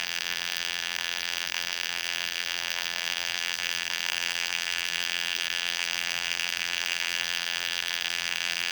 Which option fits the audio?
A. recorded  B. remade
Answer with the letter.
B